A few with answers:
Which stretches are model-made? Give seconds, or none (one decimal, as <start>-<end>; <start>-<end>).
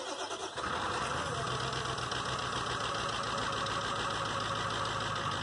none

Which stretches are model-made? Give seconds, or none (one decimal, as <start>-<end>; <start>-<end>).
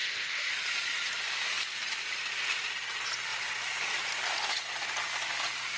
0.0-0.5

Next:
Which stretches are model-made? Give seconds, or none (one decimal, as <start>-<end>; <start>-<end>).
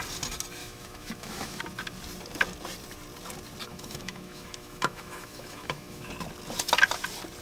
0.6-1.6; 3.7-6.1